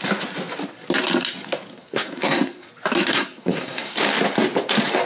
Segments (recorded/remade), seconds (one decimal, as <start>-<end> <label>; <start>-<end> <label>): 0.0-1.7 recorded; 1.7-2.7 remade; 2.7-3.1 recorded; 3.1-4.0 remade; 4.0-5.1 recorded